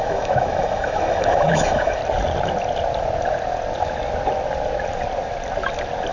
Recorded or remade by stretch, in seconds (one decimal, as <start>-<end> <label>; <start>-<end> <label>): 0.0-2.0 remade; 2.0-6.1 recorded